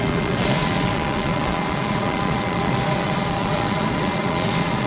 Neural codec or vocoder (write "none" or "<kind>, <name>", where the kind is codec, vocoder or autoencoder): vocoder, Vocos